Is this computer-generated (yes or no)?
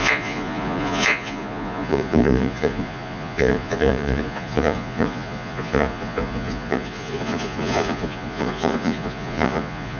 yes